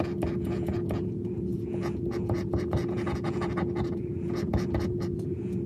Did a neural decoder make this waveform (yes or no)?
yes